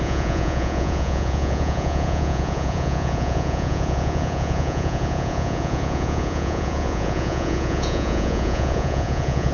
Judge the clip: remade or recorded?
remade